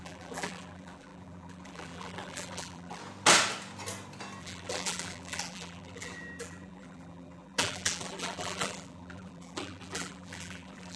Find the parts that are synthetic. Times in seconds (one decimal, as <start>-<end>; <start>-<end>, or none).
0.0-3.0; 4.4-11.0